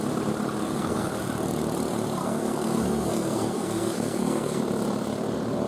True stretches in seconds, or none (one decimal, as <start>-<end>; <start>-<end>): 0.0-0.6; 1.1-2.2; 4.6-5.7